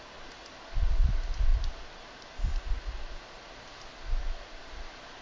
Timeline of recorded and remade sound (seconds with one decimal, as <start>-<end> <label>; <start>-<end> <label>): 0.0-5.2 recorded